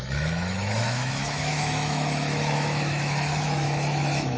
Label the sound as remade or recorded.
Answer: remade